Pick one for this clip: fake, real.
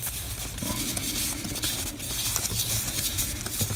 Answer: real